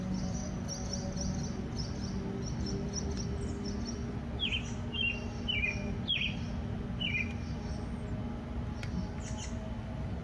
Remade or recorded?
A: recorded